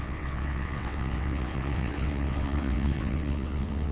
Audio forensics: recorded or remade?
remade